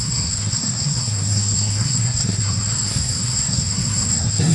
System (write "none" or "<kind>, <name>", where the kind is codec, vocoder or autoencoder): codec, SNAC